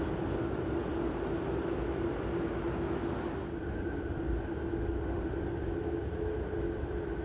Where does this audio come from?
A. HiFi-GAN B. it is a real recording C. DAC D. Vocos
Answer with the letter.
B